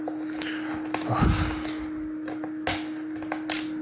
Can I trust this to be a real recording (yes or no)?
yes